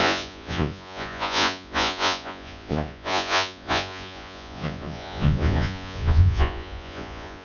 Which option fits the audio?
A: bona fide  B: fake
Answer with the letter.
B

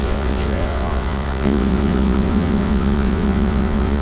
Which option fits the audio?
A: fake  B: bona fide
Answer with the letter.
A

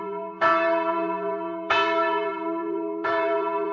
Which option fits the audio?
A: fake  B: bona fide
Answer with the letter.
A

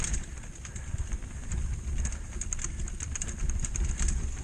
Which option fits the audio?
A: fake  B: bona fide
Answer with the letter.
B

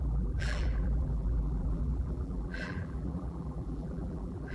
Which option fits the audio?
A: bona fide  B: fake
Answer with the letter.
B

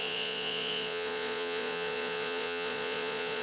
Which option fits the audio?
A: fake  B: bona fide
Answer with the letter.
A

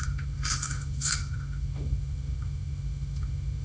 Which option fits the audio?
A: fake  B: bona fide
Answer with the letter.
A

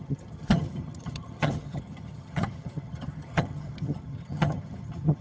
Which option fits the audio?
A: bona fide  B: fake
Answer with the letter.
B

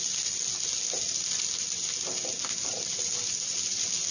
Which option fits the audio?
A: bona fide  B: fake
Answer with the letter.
A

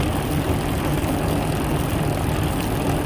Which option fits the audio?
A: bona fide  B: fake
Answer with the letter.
A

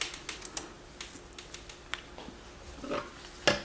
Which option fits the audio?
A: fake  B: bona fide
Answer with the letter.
B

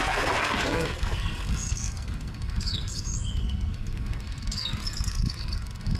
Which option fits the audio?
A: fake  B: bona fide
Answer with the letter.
A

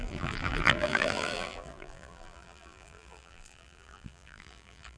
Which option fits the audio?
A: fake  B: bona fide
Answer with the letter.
A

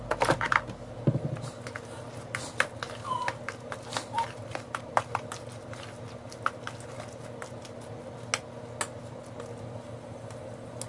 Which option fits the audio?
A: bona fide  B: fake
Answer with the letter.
A